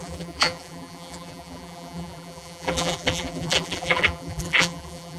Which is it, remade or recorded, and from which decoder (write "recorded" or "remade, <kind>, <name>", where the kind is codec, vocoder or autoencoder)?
remade, vocoder, BigVGAN v2